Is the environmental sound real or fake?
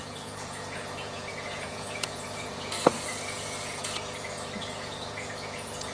fake